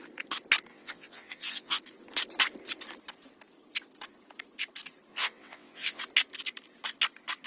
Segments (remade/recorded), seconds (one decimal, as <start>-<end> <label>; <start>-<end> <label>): 0.0-0.7 recorded; 0.7-1.8 remade; 1.8-5.1 recorded; 5.1-6.0 remade; 6.0-7.5 recorded